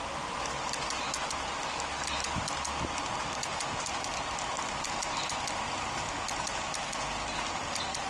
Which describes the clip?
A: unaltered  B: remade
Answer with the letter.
A